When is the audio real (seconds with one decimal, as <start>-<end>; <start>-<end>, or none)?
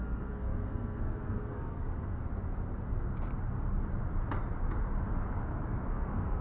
2.2-5.9